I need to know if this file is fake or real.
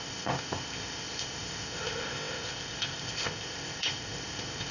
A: fake